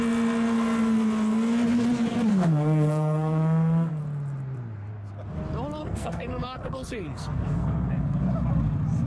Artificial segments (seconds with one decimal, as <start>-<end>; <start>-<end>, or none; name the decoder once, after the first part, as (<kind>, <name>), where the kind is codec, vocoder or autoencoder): 2.3-4.0 (codec, SNAC); 5.8-8.3